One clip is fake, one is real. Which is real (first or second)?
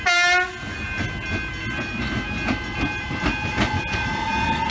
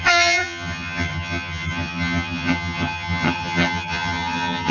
first